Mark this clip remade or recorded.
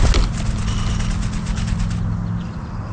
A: recorded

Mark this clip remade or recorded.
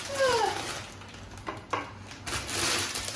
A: recorded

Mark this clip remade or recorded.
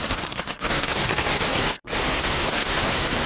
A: remade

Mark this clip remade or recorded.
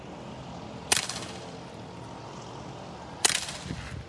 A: recorded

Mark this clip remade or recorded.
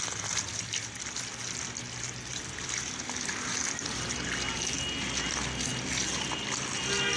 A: recorded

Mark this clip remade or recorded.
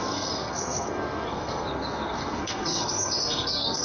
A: remade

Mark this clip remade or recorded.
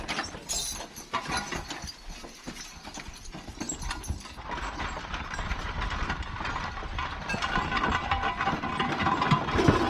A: recorded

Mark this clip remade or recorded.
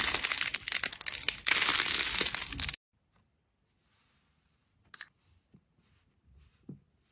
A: recorded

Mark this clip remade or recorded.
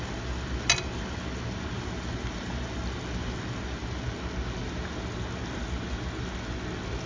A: recorded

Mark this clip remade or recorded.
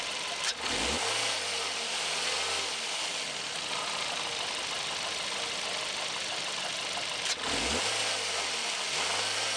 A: recorded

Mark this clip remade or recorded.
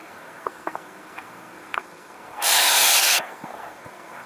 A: remade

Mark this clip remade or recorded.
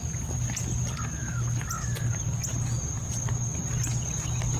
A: recorded